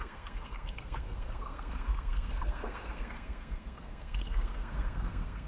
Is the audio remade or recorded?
remade